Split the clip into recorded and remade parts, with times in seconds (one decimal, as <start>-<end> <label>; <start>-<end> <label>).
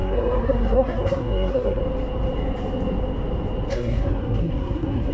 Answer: 0.0-1.8 remade; 1.8-3.7 recorded; 3.7-5.1 remade